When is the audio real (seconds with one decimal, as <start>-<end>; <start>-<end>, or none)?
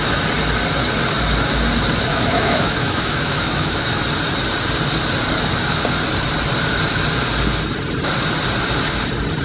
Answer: 0.0-2.1; 4.0-9.4